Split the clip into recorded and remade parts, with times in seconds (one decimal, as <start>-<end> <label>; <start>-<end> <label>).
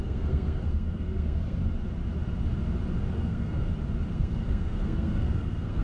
0.0-1.6 remade; 1.6-3.1 recorded; 3.1-3.6 remade; 3.6-4.1 recorded; 4.1-5.8 remade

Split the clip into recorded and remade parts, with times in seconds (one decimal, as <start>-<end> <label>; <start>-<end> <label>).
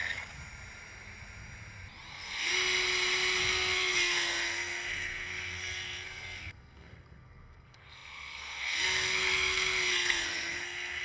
0.0-2.1 recorded; 2.1-2.5 remade; 2.5-3.4 recorded; 3.4-11.0 remade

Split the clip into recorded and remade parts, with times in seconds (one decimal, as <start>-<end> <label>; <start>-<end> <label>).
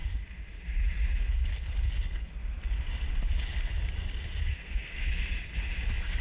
0.0-4.6 recorded; 4.6-5.1 remade; 5.1-6.2 recorded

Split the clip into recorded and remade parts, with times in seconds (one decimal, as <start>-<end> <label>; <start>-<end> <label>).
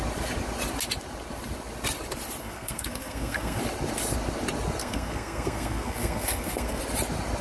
0.0-2.4 recorded; 2.4-3.6 remade; 3.6-4.8 recorded; 4.8-6.8 remade; 6.8-7.4 recorded